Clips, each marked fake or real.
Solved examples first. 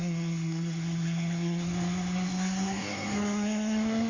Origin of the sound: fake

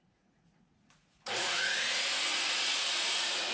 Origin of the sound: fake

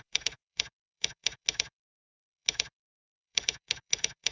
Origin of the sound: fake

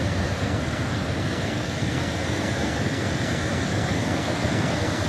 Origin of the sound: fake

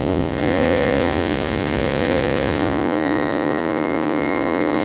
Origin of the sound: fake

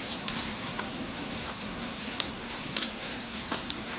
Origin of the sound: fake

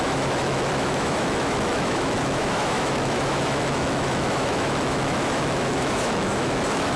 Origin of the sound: fake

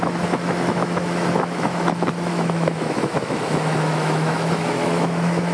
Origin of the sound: fake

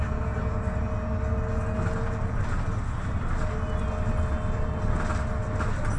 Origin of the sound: real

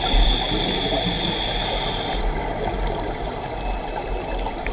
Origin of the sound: real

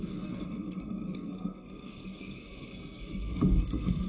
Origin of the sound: fake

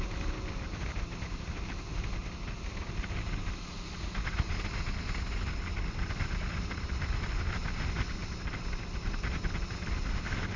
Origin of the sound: real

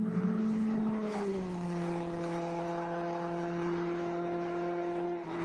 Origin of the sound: fake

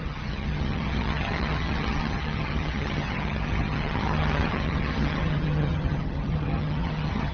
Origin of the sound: fake